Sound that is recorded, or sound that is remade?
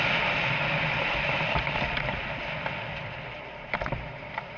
remade